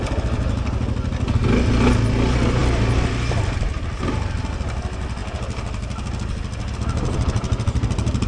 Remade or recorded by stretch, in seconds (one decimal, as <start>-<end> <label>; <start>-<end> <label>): 0.0-8.3 recorded